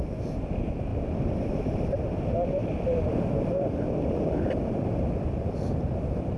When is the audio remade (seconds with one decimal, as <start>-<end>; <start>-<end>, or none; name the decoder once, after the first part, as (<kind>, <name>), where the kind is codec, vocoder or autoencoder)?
2.6-6.4 (vocoder, BigVGAN v2)